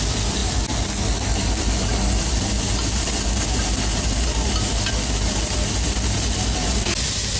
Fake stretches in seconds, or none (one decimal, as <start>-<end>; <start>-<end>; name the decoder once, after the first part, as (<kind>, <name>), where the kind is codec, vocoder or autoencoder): none